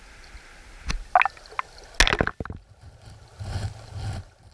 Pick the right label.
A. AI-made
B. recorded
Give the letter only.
B